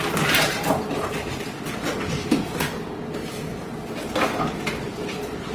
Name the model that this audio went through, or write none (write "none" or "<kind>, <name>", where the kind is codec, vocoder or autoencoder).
none